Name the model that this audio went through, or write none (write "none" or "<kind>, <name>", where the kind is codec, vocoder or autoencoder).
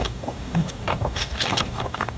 codec, DAC